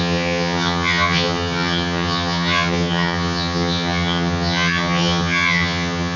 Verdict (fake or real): fake